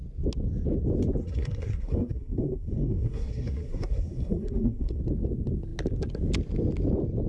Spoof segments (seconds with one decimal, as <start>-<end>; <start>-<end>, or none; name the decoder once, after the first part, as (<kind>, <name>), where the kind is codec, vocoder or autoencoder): 1.2-5.0 (codec, SNAC)